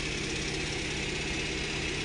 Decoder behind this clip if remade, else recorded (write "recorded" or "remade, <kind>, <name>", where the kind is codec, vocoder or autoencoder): recorded